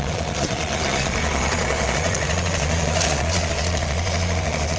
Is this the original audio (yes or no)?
no